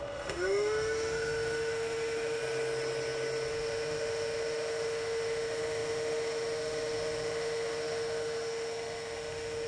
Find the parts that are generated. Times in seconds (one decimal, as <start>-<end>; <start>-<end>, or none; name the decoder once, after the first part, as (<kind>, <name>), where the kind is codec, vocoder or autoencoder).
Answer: 0.0-2.4 (autoencoder, DAC-VAE); 3.5-9.7